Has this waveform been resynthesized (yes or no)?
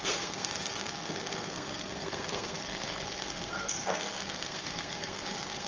yes